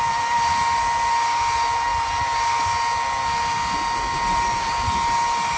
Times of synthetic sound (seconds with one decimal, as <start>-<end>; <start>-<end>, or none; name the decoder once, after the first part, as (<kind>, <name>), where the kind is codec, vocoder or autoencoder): none